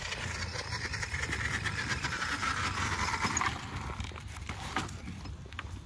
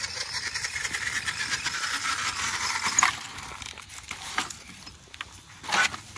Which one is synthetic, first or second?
second